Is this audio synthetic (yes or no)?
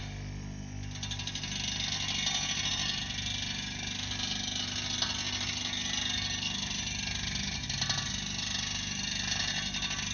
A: no